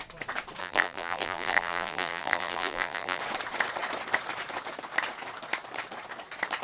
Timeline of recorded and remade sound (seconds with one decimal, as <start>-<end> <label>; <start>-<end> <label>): 0.0-0.6 recorded; 0.6-3.2 remade; 3.2-6.6 recorded